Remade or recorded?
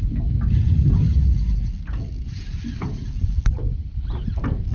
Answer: recorded